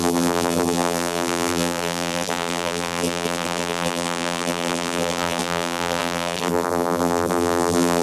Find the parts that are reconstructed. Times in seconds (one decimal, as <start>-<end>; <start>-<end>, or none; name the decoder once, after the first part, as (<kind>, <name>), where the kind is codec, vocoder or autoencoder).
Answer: 0.0-8.0 (vocoder, BigVGAN v2)